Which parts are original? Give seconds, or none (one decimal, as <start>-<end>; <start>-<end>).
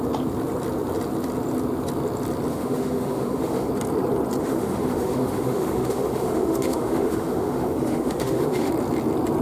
0.0-2.5; 3.7-4.4; 8.7-9.4